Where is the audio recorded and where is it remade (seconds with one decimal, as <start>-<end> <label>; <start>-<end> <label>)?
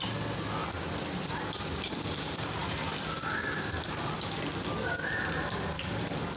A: 0.0-6.4 recorded